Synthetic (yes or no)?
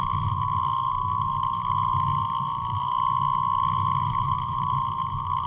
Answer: no